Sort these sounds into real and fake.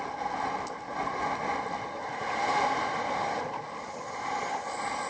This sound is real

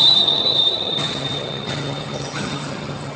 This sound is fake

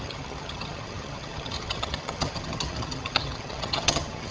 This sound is fake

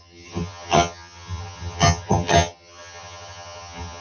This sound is fake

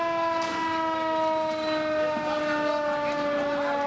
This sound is real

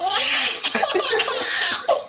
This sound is fake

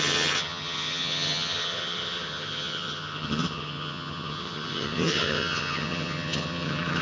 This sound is fake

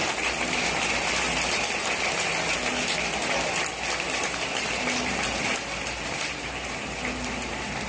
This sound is real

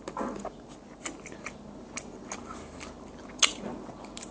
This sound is real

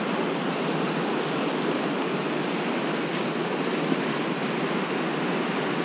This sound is real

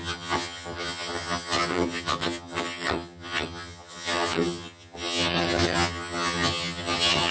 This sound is fake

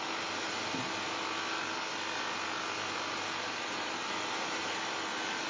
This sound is real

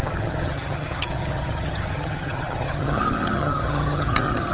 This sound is fake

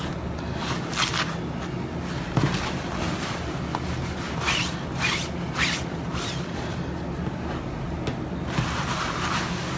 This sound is real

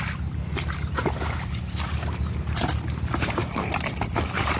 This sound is real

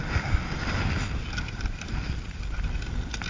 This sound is real